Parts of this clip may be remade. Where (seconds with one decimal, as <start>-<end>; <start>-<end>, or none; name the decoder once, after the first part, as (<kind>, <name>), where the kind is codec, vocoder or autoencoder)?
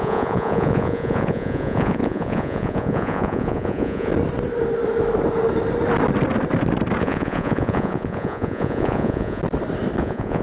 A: 0.0-4.1 (vocoder, Vocos); 7.0-9.4; 10.0-10.4